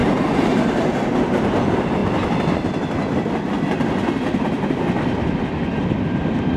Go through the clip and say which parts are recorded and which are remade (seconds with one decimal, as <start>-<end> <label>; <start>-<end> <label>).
0.0-1.6 remade; 1.6-6.6 recorded